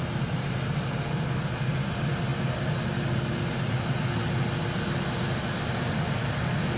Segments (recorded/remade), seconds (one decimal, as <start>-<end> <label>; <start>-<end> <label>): 0.0-6.8 recorded